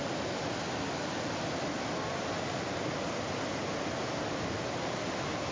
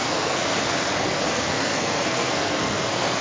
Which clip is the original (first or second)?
first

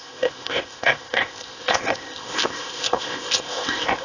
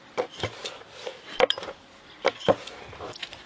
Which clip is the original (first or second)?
second